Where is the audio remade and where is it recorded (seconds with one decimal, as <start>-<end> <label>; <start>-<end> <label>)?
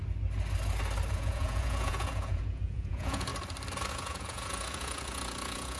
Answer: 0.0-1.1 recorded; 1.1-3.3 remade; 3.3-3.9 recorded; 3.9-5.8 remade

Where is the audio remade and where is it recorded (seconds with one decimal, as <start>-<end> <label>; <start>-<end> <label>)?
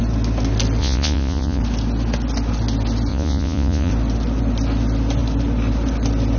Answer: 0.0-0.8 recorded; 0.8-1.6 remade; 1.6-3.1 recorded; 3.1-3.9 remade; 3.9-6.4 recorded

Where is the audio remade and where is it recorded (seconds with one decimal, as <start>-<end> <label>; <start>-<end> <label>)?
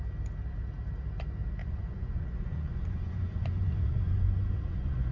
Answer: 0.0-1.6 recorded; 1.6-5.1 remade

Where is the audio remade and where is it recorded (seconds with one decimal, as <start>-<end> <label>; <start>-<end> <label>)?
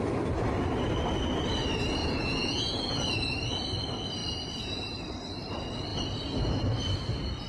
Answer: 0.0-2.0 recorded; 2.0-2.8 remade; 2.8-7.5 recorded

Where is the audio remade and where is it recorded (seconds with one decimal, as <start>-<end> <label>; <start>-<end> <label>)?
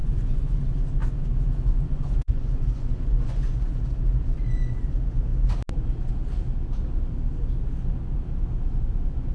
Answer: 0.0-0.6 remade; 0.6-1.0 recorded; 1.0-3.8 remade; 3.8-9.3 recorded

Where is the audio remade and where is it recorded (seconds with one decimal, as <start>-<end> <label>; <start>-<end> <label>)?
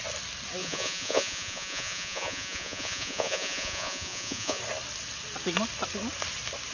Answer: 0.0-0.6 recorded; 0.6-4.6 remade; 4.6-6.7 recorded